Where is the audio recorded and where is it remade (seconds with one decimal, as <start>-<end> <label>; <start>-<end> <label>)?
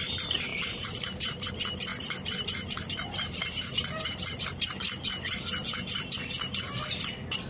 0.0-0.5 recorded; 0.5-1.5 remade; 1.5-1.9 recorded; 1.9-4.4 remade; 4.4-7.5 recorded